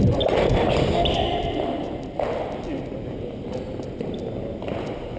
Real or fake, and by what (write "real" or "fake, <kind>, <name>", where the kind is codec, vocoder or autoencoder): real